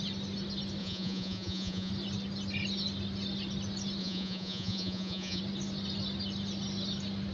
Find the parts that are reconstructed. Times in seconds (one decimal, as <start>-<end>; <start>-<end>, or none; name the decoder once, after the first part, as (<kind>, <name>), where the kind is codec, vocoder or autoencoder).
0.8-1.9 (vocoder, Vocos); 4.0-5.4

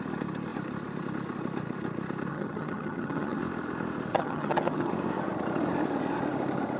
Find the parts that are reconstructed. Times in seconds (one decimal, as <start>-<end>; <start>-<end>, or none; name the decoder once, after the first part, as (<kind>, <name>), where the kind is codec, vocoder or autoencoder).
2.3-3.4 (vocoder, HiFi-GAN); 4.1-4.9

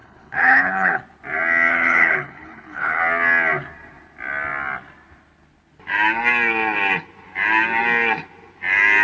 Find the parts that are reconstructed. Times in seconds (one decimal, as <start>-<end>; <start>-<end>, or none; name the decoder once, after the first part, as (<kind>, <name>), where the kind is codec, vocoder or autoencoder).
0.0-1.0 (codec, HILCodec); 1.7-3.0

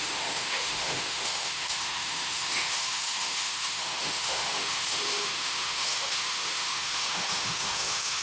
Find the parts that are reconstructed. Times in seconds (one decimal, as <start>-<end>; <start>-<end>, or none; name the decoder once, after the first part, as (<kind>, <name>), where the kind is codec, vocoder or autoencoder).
0.0-8.2 (autoencoder, DAC-VAE)